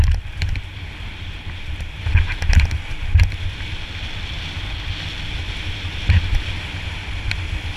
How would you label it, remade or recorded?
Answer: recorded